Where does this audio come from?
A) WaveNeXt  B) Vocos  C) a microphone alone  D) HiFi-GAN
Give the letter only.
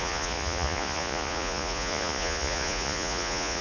B